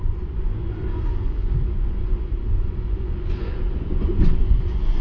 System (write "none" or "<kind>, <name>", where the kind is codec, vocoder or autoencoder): vocoder, Vocos